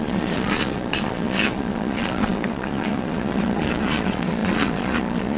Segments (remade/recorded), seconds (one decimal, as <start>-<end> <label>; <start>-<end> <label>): 0.0-5.4 remade